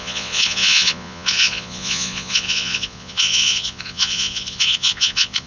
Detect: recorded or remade remade